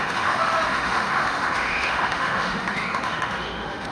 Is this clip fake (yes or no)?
yes